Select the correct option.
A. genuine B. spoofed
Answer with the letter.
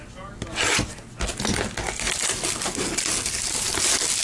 A